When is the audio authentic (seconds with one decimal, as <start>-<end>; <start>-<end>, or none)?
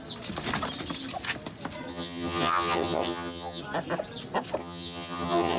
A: 0.0-1.9; 3.6-4.6